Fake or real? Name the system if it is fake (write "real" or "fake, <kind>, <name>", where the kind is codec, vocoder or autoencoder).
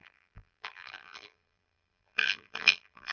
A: fake, vocoder, BigVGAN v2